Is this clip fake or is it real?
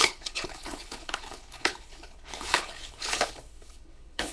fake